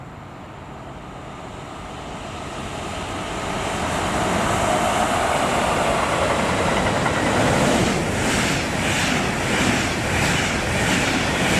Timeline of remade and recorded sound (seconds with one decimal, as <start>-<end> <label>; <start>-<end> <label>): 0.0-11.6 recorded